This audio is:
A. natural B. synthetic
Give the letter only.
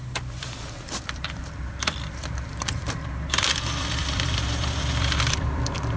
B